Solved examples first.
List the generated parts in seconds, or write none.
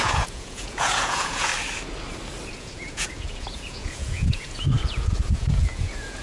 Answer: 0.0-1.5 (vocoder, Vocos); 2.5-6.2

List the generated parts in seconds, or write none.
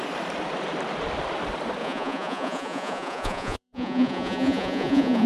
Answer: 1.8-5.3 (vocoder, Vocos)